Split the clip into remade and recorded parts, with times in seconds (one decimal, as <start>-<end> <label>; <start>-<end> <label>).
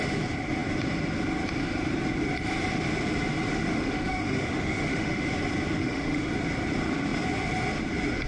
0.0-3.5 recorded; 3.5-5.2 remade; 5.2-5.8 recorded; 5.8-6.3 remade; 6.3-8.3 recorded